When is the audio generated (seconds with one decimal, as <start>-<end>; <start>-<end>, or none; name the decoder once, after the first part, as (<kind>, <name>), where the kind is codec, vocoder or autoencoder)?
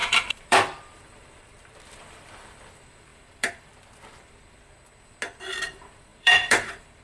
0.0-1.0 (vocoder, BigVGAN v2); 3.1-3.7; 6.1-7.0